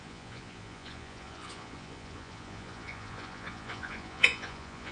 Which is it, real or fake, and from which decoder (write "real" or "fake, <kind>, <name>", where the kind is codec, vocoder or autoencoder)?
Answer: fake, vocoder, Vocos